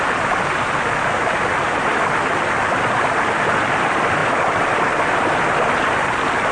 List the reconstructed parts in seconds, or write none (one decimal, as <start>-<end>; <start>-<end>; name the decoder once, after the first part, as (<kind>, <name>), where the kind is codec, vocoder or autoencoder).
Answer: none